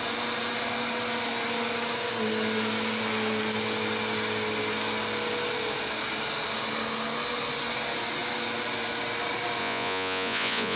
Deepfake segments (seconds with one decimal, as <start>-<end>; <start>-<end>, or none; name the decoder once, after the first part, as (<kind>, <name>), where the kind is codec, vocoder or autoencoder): 9.6-10.8 (vocoder, Vocos)